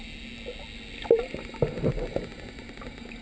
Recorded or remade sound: recorded